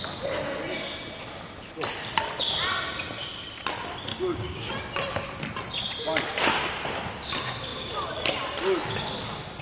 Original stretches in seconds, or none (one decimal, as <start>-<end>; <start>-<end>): 0.0-4.1; 4.7-9.6